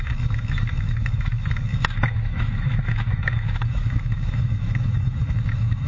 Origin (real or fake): fake